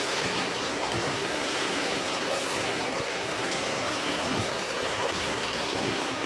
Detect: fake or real fake